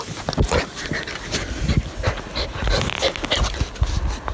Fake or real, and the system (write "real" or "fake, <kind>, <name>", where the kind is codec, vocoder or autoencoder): real